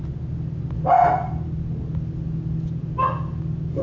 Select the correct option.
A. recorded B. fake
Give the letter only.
A